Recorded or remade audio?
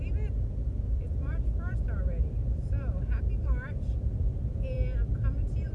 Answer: remade